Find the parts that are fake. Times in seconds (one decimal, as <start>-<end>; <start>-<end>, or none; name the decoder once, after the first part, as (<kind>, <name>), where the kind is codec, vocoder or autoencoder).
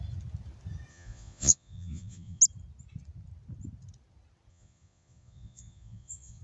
0.9-2.4 (vocoder, Vocos); 4.5-6.4